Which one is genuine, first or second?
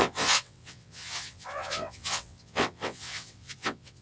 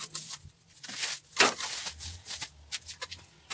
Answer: second